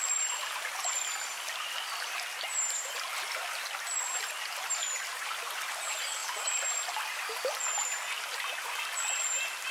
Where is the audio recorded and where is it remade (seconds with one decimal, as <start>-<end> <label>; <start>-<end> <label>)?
0.0-9.7 recorded